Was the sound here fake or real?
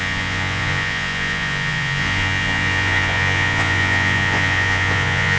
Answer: fake